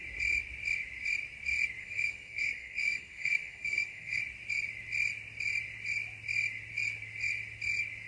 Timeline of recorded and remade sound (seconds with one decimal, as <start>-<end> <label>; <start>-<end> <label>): 0.0-1.8 recorded; 1.8-4.2 remade; 4.2-8.1 recorded